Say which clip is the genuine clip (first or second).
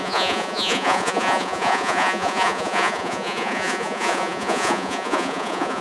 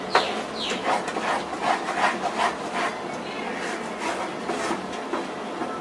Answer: second